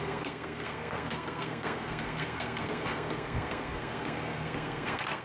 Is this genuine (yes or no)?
no